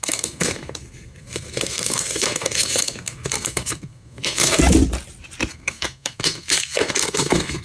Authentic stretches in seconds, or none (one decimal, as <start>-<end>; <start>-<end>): 4.6-5.5